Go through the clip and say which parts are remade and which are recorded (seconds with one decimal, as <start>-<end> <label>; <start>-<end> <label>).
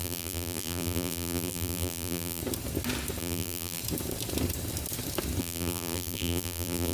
0.0-2.4 remade; 2.4-3.2 recorded; 3.2-3.8 remade; 3.8-5.4 recorded; 5.4-6.9 remade